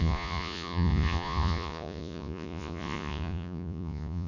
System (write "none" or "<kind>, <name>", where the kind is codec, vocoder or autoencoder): vocoder, Vocos